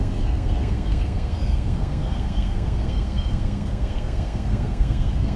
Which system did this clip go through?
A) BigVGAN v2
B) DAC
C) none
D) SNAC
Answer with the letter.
D